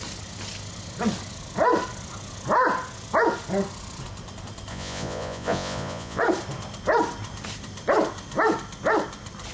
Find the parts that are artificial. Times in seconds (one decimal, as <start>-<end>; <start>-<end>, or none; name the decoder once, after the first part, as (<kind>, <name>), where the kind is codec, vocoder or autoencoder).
4.7-6.2 (vocoder, Vocos)